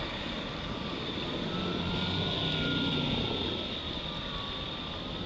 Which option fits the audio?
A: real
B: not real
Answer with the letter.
A